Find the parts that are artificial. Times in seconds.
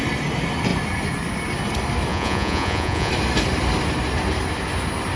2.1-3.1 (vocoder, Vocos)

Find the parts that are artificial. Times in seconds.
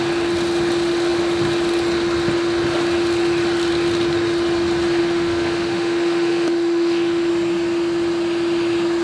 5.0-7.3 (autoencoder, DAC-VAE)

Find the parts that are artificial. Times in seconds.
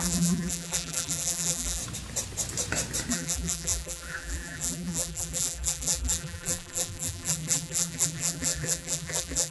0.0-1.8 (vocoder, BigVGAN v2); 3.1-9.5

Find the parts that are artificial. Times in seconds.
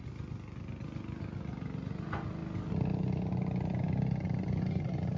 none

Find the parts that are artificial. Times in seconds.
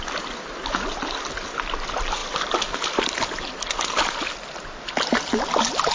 none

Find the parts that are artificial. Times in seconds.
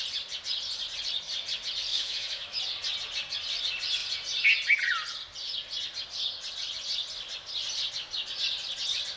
1.9-2.6 (autoencoder, DAC-VAE)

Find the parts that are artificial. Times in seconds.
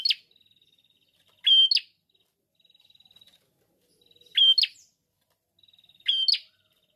none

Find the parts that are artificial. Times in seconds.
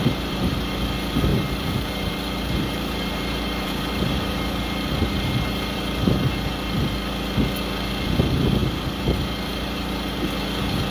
0.0-0.7 (vocoder, BigVGAN v2); 1.3-6.3; 8.6-10.3